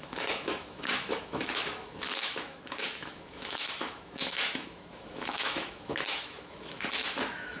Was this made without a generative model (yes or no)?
no